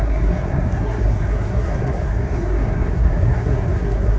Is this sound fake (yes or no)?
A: yes